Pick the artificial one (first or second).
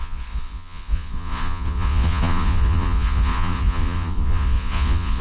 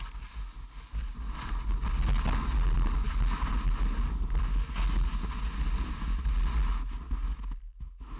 first